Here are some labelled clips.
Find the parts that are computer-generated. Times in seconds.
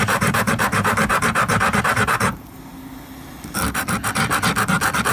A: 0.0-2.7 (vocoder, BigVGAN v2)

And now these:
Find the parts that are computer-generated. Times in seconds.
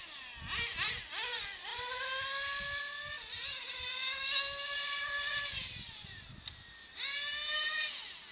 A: none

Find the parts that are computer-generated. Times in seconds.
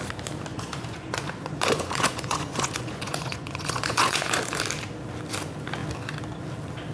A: 0.5-4.6 (vocoder, Vocos)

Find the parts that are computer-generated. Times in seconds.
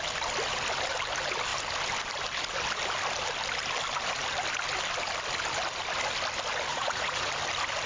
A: 6.7-7.3 (vocoder, Vocos)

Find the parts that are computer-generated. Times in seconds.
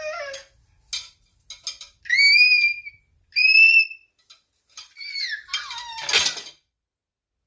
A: none